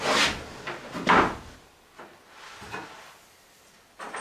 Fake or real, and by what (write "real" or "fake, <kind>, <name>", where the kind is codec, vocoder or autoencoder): real